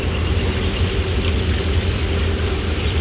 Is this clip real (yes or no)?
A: yes